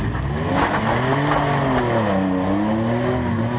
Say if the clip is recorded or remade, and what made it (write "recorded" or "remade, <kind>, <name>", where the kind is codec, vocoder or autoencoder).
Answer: recorded